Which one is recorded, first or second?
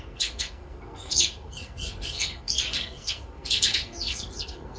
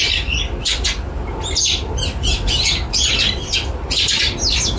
second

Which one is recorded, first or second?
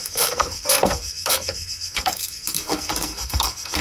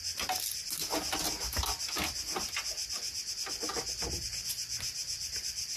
second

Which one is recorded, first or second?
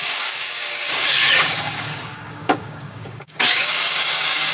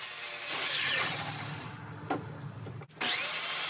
second